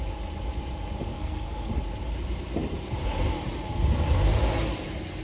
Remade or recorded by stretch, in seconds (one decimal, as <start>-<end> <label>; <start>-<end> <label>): 0.0-1.1 recorded; 1.1-1.7 remade; 1.7-5.2 recorded